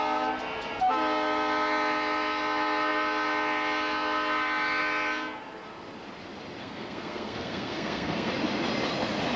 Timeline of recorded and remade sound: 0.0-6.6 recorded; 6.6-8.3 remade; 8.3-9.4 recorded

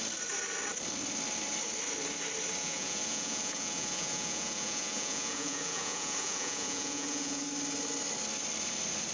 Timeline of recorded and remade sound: 0.0-2.6 recorded; 2.6-7.4 remade; 7.4-9.1 recorded

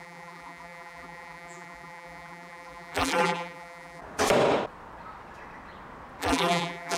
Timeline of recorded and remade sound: 0.0-4.0 remade; 4.0-6.2 recorded; 6.2-7.0 remade

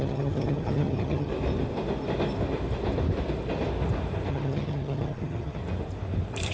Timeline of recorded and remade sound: 0.0-1.3 remade; 1.3-4.3 recorded; 4.3-5.6 remade; 5.6-6.5 recorded

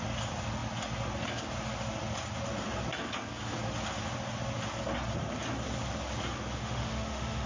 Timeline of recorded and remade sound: 0.0-6.6 recorded; 6.6-7.5 remade

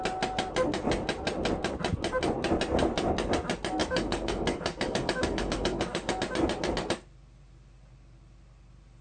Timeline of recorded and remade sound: 0.0-3.8 recorded; 3.8-6.2 remade; 6.2-9.0 recorded